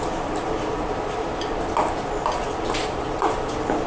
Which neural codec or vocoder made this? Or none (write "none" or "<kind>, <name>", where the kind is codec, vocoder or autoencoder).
none